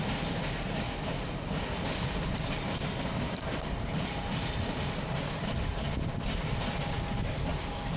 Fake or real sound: real